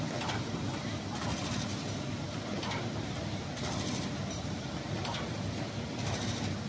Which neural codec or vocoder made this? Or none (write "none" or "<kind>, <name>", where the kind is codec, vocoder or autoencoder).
none